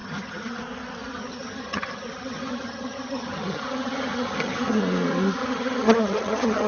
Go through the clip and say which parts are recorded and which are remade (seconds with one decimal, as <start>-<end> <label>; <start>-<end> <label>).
0.0-0.6 remade; 0.6-1.1 recorded; 1.1-4.8 remade; 4.8-5.4 recorded; 5.4-6.7 remade